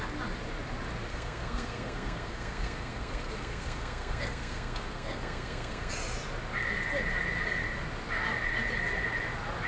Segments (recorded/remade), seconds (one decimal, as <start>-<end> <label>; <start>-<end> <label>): 0.0-1.1 recorded; 1.1-5.9 remade; 5.9-9.7 recorded

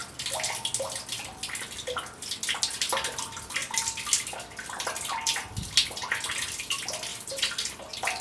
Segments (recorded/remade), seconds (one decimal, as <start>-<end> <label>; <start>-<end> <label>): 0.0-7.1 recorded; 7.1-8.2 remade